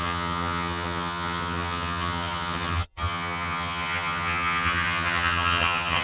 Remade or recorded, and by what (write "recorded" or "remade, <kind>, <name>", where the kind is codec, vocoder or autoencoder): remade, vocoder, HiFi-GAN